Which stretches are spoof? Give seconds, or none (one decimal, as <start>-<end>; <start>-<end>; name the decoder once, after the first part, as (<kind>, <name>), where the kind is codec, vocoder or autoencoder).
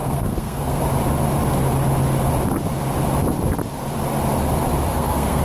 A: 0.0-0.8 (codec, SNAC); 4.9-5.4